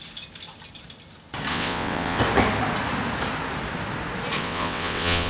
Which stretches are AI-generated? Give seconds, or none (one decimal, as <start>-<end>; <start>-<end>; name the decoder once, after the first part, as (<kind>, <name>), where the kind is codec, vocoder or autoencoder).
1.5-2.2 (vocoder, WaveNeXt); 4.4-5.3